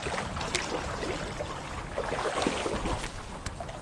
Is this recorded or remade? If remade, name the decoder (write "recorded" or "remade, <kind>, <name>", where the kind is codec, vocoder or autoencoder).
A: recorded